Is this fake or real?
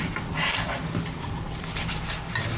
fake